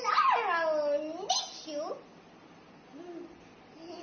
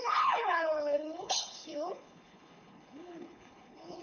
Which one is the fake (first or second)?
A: second